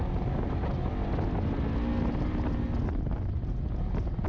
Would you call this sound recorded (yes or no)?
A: yes